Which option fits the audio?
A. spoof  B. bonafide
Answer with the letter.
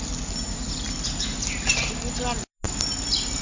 B